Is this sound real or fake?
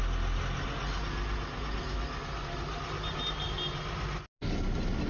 real